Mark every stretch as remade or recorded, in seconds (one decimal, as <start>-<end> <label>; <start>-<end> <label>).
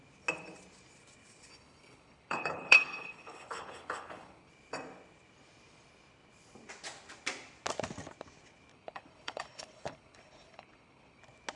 0.0-1.5 recorded; 1.5-4.5 remade; 4.5-8.7 recorded; 8.7-11.2 remade; 11.2-11.6 recorded